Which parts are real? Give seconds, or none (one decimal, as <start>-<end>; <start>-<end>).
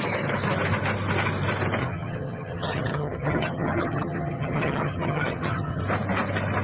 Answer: 0.0-1.8; 5.8-6.6